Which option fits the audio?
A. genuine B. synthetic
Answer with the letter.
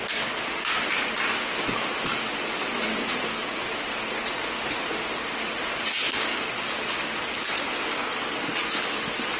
A